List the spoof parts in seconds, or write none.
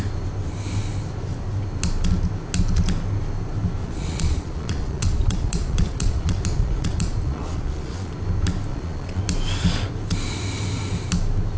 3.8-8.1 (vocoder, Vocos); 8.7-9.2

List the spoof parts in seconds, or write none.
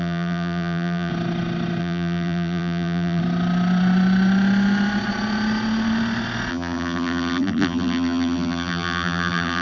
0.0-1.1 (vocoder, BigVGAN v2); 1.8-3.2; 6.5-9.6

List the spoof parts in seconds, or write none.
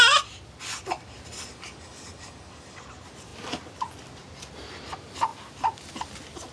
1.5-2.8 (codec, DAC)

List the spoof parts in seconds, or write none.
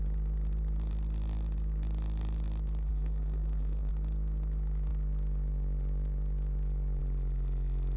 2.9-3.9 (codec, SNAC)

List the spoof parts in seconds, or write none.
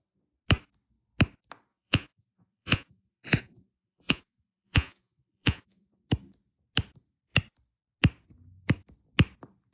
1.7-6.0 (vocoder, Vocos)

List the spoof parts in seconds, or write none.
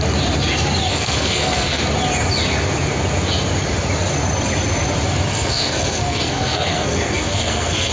0.9-1.8 (codec, SNAC); 5.3-7.9